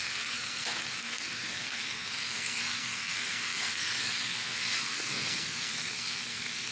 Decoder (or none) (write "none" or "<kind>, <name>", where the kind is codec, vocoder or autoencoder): codec, SNAC